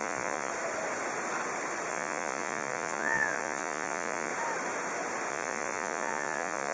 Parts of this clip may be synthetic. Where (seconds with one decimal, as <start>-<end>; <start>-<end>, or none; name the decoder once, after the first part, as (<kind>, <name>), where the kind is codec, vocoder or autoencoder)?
0.0-0.5 (vocoder, Vocos); 1.9-4.3; 5.3-6.7

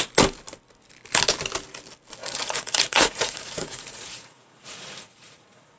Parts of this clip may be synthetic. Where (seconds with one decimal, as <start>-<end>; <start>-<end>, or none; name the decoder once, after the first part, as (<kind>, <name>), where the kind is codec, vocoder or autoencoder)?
2.2-5.8 (vocoder, Vocos)

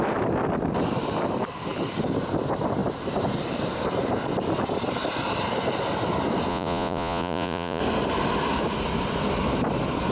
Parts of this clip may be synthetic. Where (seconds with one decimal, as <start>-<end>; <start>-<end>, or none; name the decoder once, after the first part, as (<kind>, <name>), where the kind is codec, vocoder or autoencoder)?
6.5-7.8 (vocoder, Vocos)

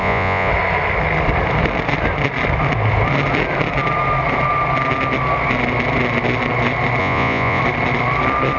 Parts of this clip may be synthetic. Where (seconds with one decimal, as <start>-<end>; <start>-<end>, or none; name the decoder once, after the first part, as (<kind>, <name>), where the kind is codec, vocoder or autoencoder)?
0.0-0.5 (vocoder, Vocos); 7.0-7.6

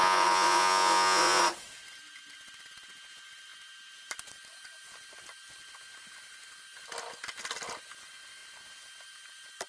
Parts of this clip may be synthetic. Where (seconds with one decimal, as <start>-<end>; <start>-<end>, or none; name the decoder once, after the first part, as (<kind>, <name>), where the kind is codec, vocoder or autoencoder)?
0.0-1.4 (vocoder, Vocos)